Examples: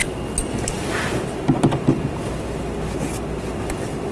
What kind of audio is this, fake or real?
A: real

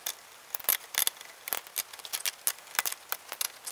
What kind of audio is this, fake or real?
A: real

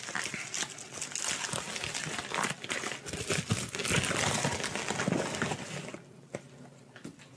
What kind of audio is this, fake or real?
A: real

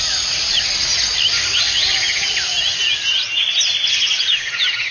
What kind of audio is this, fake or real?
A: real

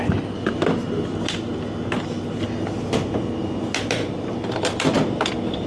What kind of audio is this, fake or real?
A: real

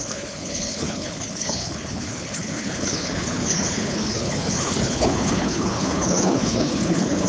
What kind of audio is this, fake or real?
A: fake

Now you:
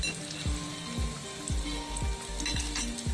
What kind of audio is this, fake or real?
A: real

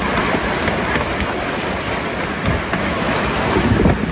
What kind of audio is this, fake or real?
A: real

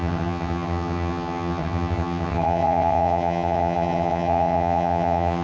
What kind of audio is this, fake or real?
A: fake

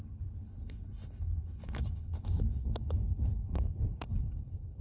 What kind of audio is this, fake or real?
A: fake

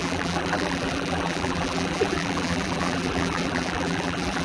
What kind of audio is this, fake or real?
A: fake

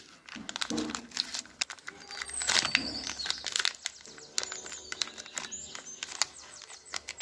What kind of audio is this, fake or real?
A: real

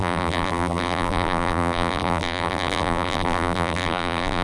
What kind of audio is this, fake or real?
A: fake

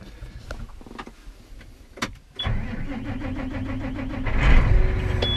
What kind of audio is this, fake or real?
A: real